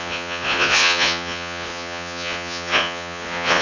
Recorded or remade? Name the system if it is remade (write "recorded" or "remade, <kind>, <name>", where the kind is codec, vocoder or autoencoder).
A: remade, vocoder, Vocos